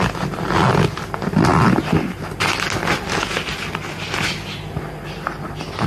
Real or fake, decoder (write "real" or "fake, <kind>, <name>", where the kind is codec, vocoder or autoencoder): real